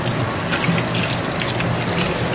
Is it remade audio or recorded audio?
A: recorded